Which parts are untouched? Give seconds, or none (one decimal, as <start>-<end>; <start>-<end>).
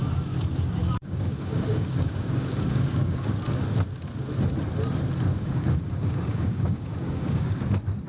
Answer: 0.0-0.8; 3.4-5.3; 7.6-8.1